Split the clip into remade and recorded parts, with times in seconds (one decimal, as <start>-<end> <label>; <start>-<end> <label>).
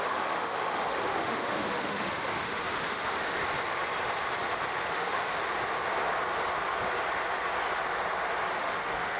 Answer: 0.0-3.4 remade; 3.4-4.9 recorded; 4.9-5.4 remade; 5.4-8.6 recorded; 8.6-9.2 remade